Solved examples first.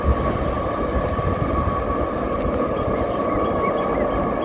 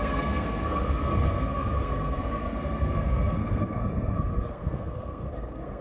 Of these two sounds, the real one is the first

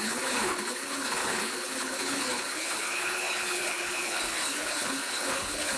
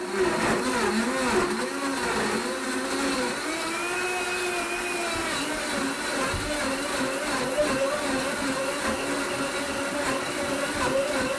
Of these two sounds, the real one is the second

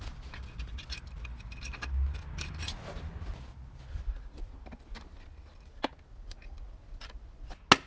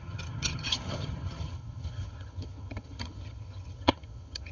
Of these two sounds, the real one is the first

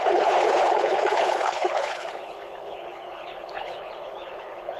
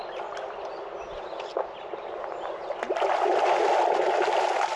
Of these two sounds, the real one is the second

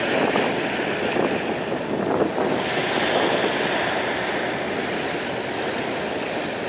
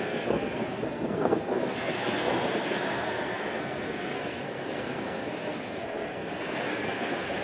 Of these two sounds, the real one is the first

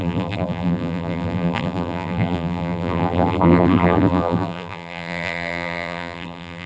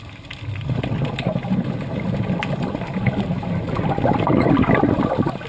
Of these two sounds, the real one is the second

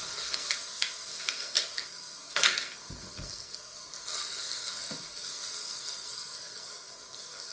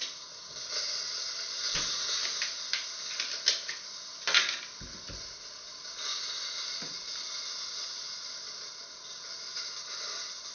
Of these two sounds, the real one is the second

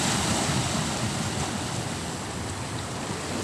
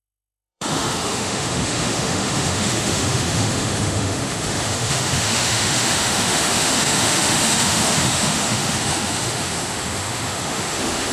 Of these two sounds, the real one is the first